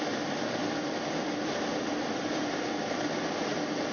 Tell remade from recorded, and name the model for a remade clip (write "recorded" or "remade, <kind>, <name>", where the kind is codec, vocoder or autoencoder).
recorded